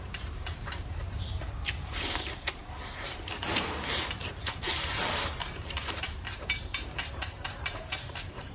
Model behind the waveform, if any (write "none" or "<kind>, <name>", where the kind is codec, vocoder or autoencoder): vocoder, BigVGAN v2